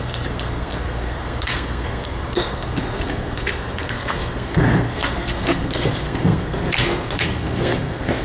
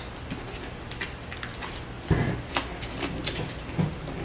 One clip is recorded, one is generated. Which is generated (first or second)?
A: first